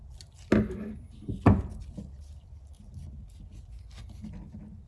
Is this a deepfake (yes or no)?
no